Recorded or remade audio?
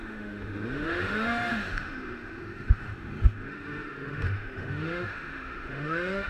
remade